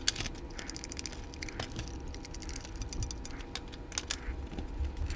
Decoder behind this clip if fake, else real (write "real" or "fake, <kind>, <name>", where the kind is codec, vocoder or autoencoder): real